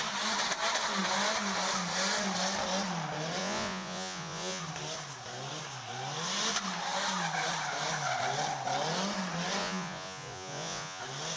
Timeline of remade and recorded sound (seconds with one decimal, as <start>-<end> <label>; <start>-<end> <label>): 0.0-3.4 recorded; 3.4-4.6 remade; 4.6-9.6 recorded; 9.6-11.0 remade; 11.0-11.4 recorded